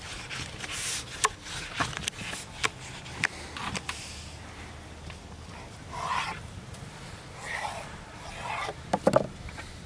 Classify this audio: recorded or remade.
recorded